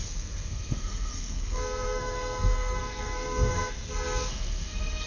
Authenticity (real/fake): fake